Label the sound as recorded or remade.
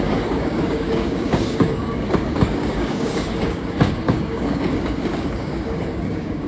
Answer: remade